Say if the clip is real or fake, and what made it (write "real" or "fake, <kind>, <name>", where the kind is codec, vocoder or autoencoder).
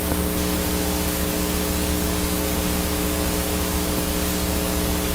fake, codec, DAC